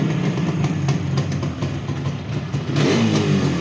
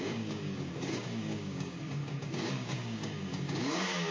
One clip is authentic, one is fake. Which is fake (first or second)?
second